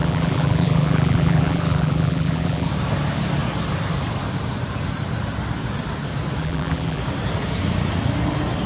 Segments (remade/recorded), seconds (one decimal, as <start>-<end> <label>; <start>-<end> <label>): 0.0-2.7 remade; 2.7-6.4 recorded; 6.4-7.0 remade; 7.0-8.7 recorded

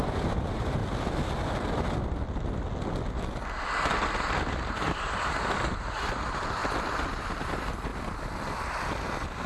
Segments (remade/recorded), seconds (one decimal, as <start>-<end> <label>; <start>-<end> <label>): 0.0-0.8 remade; 0.8-4.5 recorded; 4.5-6.6 remade; 6.6-7.2 recorded; 7.2-7.9 remade; 7.9-9.5 recorded

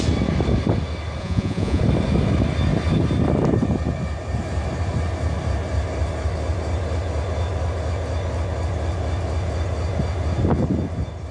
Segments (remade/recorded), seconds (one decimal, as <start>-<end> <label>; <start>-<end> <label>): 0.0-1.2 recorded; 1.2-1.8 remade; 1.8-11.3 recorded

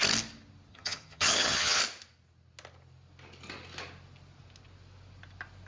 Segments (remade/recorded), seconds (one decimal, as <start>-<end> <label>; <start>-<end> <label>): 0.0-0.7 recorded; 0.7-1.8 remade; 1.8-5.7 recorded

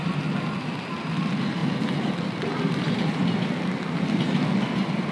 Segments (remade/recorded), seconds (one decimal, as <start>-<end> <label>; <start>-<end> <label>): 0.0-1.6 recorded; 1.6-2.6 remade; 2.6-5.1 recorded

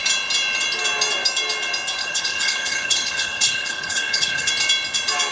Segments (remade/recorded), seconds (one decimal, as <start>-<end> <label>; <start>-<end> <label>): 0.0-2.0 recorded; 2.0-4.5 remade; 4.5-5.3 recorded

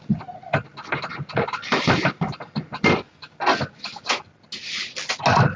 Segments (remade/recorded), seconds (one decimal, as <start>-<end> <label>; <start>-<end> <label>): 0.0-5.6 recorded

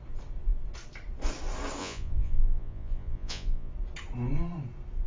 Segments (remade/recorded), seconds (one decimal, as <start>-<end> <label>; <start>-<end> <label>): 0.0-1.8 recorded; 1.8-3.7 remade; 3.7-5.1 recorded